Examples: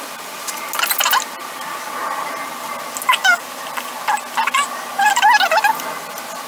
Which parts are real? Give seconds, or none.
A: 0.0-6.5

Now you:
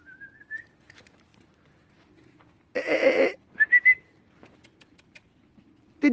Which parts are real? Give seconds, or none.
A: 0.0-6.1

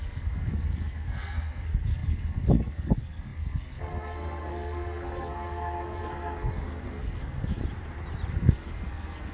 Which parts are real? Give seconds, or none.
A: 7.6-8.3